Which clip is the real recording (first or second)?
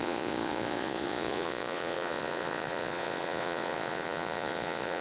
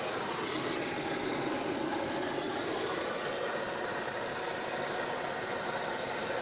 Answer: second